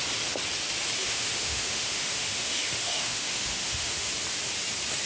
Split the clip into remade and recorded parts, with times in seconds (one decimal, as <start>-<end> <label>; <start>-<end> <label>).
0.0-1.0 recorded; 1.0-4.1 remade; 4.1-5.1 recorded